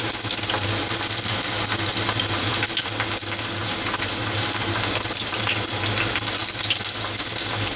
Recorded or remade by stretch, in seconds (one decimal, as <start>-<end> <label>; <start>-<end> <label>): 0.0-3.6 recorded; 3.6-5.5 remade; 5.5-7.8 recorded